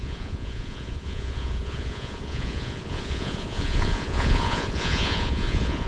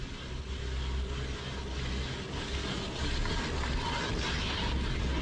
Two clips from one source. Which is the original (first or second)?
second